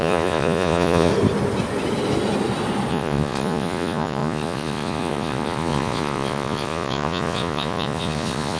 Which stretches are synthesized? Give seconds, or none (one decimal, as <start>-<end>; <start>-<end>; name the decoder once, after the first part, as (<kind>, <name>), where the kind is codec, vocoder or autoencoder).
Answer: 0.0-1.1 (vocoder, Vocos); 2.9-8.6

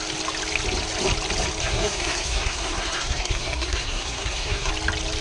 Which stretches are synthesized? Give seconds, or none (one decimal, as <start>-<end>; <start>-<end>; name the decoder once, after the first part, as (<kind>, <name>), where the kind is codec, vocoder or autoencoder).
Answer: 1.6-4.7 (codec, SNAC)

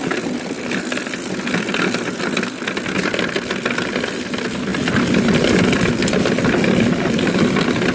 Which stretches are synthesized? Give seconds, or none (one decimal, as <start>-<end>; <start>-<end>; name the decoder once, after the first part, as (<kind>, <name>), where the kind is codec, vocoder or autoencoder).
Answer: none